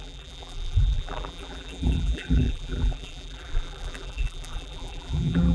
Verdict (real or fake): fake